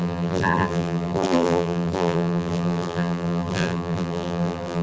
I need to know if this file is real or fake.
fake